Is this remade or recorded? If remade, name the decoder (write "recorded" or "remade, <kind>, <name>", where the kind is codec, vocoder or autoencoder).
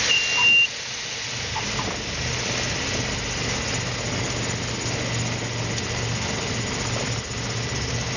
recorded